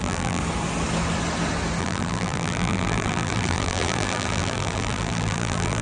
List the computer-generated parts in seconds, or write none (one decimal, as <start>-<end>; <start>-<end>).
0.0-0.4; 1.8-5.8